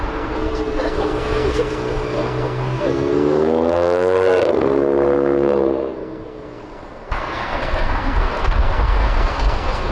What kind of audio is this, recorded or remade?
remade